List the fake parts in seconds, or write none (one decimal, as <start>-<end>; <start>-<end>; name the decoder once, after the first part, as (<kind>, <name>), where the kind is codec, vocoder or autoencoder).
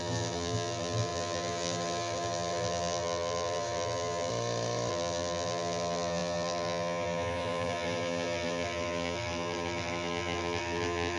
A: 0.0-4.3 (vocoder, BigVGAN v2); 4.9-11.2